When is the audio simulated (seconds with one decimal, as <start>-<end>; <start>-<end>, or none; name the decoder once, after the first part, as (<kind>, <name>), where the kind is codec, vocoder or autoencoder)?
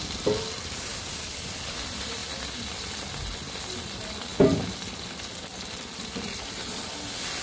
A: none